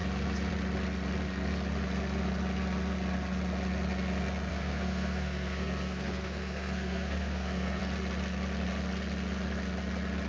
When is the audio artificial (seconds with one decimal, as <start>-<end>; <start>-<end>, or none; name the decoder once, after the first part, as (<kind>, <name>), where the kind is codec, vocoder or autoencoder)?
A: 4.5-7.8 (codec, SNAC)